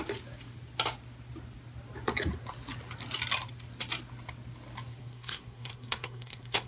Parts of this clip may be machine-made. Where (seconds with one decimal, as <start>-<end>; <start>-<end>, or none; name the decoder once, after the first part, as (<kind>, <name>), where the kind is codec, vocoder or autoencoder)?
5.0-6.7 (codec, SNAC)